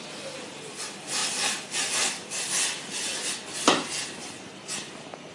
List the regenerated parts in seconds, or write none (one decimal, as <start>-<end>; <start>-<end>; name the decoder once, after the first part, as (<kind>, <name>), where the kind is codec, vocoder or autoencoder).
1.2-3.0 (vocoder, BigVGAN v2)